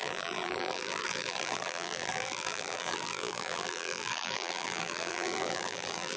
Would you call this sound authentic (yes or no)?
no